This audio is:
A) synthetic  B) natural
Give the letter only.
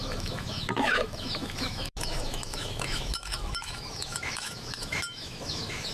A